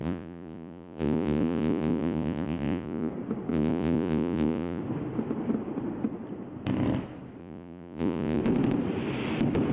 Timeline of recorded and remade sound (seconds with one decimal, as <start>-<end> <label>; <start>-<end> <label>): 0.0-3.1 remade; 3.1-3.5 recorded; 3.5-4.8 remade; 4.8-7.4 recorded; 7.4-8.4 remade; 8.4-9.7 recorded